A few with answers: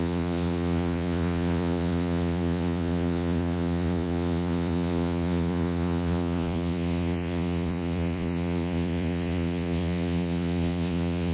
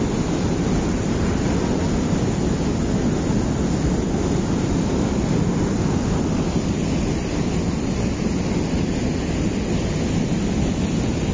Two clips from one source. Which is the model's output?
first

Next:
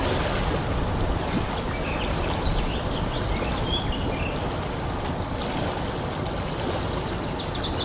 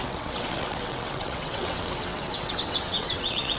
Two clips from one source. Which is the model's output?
second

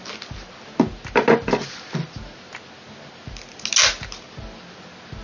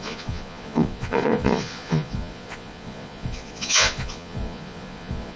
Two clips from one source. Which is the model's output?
second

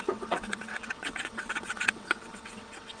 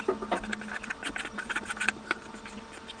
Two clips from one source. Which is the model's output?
first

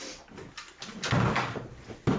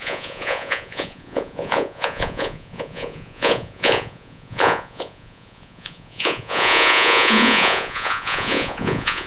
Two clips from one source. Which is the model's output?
second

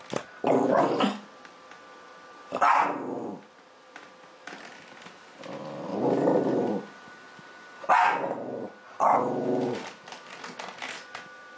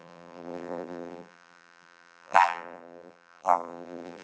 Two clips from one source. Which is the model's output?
second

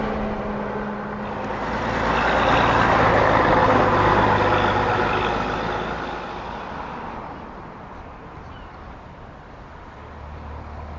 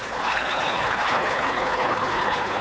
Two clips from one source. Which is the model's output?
second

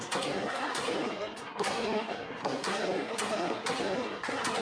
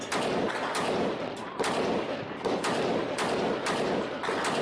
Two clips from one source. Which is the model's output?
first